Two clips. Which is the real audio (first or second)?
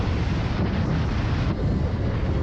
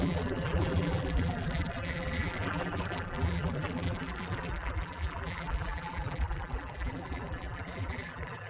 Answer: first